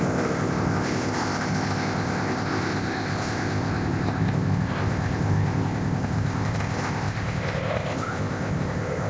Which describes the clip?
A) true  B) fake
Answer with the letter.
B